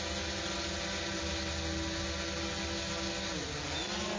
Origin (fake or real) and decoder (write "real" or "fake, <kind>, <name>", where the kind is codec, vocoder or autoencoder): real